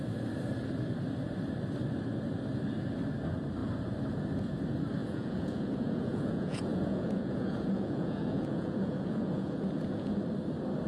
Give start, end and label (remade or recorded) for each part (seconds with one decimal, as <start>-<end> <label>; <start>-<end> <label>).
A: 0.0-5.0 recorded; 5.0-10.2 remade; 10.2-10.9 recorded